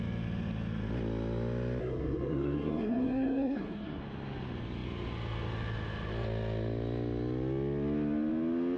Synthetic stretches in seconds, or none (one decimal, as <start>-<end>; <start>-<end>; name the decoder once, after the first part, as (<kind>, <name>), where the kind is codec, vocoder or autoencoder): 1.8-4.0 (codec, SNAC)